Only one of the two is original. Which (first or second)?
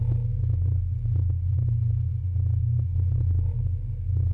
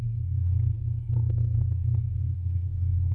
first